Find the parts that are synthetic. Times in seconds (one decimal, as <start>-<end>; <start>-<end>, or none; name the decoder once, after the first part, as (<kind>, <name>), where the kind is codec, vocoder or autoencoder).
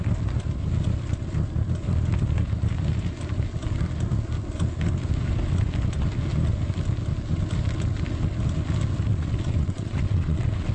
9.1-10.7 (vocoder, WaveNeXt)